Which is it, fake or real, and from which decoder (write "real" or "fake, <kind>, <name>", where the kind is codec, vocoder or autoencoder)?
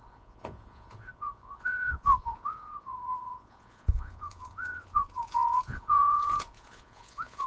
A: fake, vocoder, Vocos